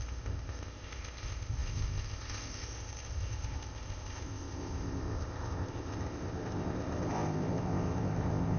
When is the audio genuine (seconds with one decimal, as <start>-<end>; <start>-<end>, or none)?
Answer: none